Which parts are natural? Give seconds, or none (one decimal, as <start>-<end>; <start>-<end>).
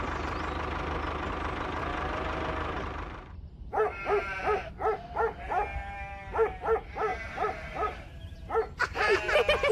0.0-1.9; 4.7-5.7; 6.3-7.1